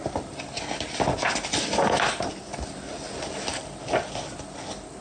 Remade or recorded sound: recorded